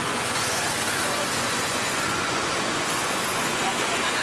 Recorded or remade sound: remade